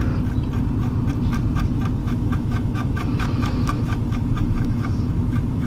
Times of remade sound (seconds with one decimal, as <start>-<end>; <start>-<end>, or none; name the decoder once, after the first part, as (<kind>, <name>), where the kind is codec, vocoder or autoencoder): 2.0-5.7 (autoencoder, DAC-VAE)